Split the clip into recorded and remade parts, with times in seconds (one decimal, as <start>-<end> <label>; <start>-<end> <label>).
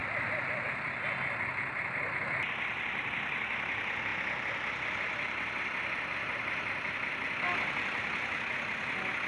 0.0-1.5 recorded; 1.5-4.1 remade; 4.1-9.3 recorded